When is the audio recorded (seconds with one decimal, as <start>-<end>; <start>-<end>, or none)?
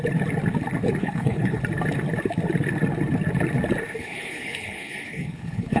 0.0-1.0; 1.6-4.0